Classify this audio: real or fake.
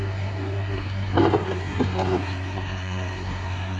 fake